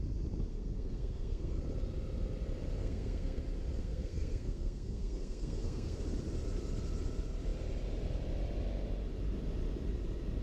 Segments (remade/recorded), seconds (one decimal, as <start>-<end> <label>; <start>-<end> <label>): 0.0-0.5 recorded; 0.5-1.6 remade; 1.6-2.8 recorded; 2.8-3.4 remade; 3.4-3.8 recorded; 3.8-6.0 remade; 6.0-10.4 recorded